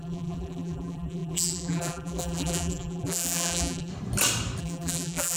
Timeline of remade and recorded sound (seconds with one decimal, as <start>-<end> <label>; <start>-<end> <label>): 0.0-3.9 remade; 3.9-4.6 recorded; 4.6-5.4 remade